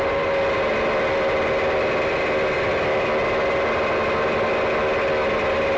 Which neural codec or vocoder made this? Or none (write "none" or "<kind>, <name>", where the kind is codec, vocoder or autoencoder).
none